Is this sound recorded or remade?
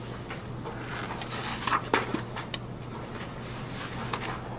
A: recorded